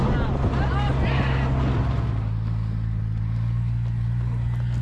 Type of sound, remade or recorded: recorded